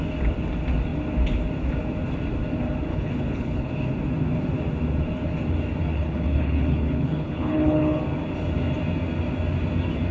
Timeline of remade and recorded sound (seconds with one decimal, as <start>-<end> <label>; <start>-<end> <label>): 0.0-2.9 recorded; 2.9-3.7 remade; 3.7-5.9 recorded; 5.9-8.0 remade; 8.0-10.1 recorded